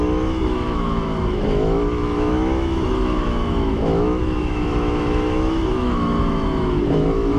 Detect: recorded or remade remade